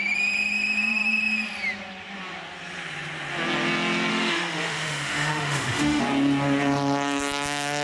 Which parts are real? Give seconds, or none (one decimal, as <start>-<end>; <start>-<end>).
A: 0.0-4.1; 6.0-7.8